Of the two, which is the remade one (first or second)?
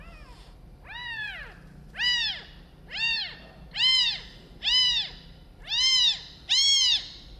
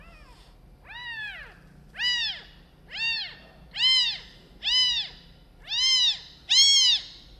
first